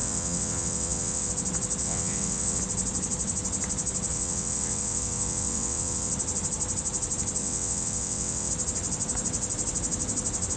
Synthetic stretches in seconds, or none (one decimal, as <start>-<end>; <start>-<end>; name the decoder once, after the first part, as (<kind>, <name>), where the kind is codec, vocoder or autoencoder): 0.0-1.3 (vocoder, WaveNeXt); 1.8-2.6; 4.1-6.1; 7.4-8.5